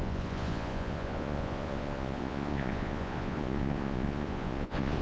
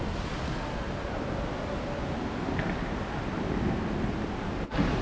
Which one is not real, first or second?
first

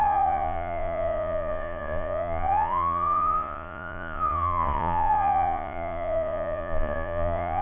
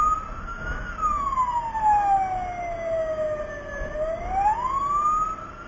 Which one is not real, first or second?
first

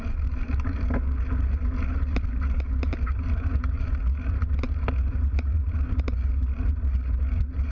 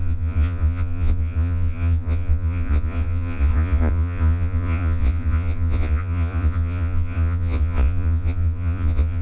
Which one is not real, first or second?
second